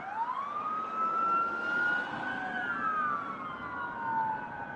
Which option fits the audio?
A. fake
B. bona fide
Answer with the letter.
B